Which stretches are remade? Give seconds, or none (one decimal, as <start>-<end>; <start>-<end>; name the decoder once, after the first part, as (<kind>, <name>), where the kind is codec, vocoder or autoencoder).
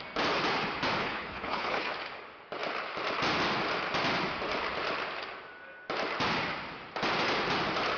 1.0-1.9 (codec, HILCodec)